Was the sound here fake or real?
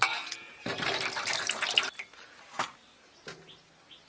real